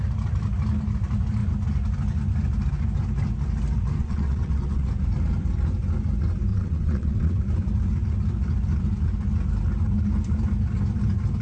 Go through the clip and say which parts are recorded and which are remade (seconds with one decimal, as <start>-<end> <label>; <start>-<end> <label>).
0.0-4.0 recorded; 4.0-4.9 remade; 4.9-6.5 recorded; 6.5-7.4 remade; 7.4-11.4 recorded